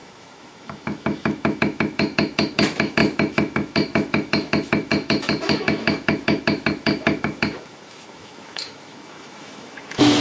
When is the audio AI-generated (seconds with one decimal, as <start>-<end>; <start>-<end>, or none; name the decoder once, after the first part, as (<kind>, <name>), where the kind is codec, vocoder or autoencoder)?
0.0-10.2 (autoencoder, DAC-VAE)